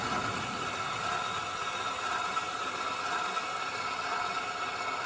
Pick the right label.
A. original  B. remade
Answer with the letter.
A